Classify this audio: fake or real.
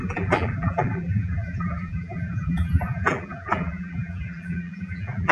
fake